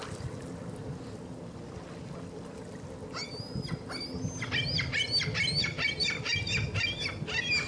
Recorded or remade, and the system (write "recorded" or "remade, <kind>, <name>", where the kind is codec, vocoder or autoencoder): recorded